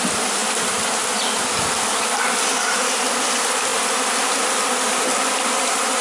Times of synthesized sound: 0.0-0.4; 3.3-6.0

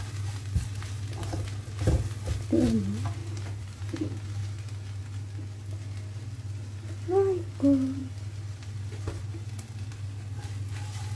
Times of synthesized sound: 3.2-3.8

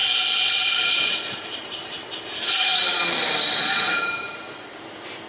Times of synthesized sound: 0.7-5.3

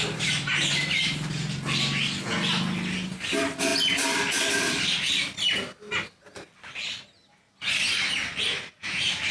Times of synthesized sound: none

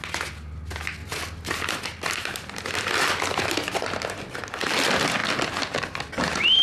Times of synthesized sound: none

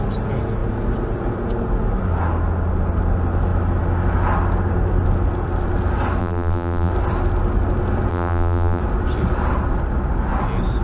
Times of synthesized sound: 6.2-6.9; 8.1-8.8

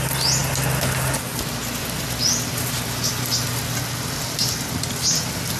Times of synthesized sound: none

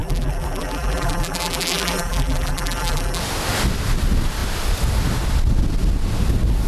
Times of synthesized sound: 0.0-3.2